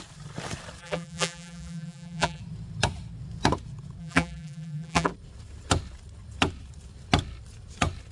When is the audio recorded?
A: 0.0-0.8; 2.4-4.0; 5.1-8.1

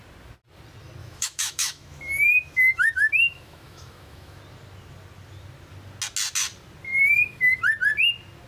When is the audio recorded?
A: 0.0-1.0; 4.4-7.0; 7.6-8.5

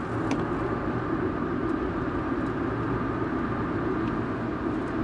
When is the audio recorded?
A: 0.0-5.0